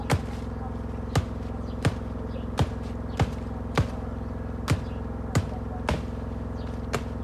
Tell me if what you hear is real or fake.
real